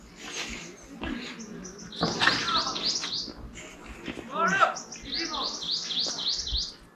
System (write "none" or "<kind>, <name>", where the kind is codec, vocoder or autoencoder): none